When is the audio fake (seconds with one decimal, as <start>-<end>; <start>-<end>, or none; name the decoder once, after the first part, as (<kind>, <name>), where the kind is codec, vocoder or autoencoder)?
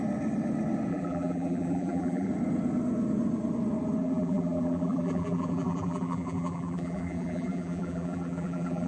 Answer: 0.9-2.3 (vocoder, BigVGAN v2); 4.0-8.9